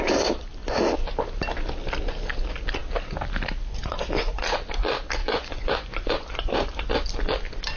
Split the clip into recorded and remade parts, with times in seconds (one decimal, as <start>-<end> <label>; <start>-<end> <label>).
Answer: 0.0-5.2 recorded; 5.2-6.9 remade; 6.9-7.8 recorded